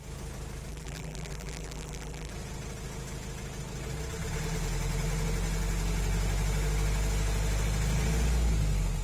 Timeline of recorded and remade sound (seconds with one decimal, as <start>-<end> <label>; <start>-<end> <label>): 0.0-0.7 recorded; 0.7-2.3 remade; 2.3-9.0 recorded